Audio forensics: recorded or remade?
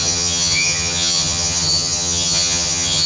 remade